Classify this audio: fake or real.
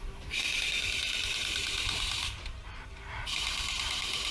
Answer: fake